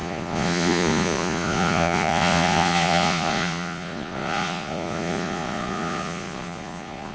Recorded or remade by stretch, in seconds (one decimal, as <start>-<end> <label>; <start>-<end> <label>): 0.0-7.1 remade